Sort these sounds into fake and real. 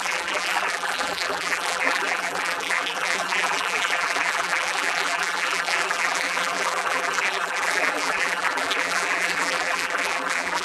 fake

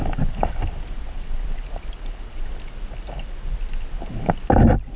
real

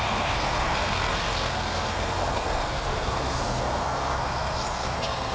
fake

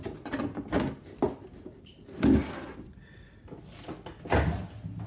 real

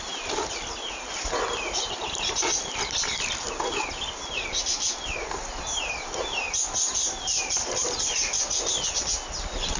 real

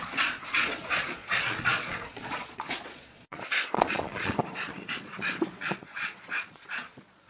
fake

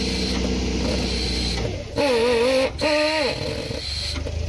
real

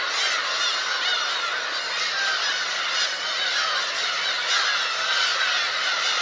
real